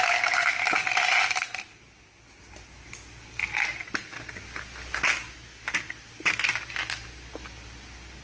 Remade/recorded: recorded